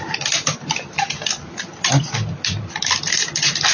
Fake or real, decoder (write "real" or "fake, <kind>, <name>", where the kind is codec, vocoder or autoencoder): real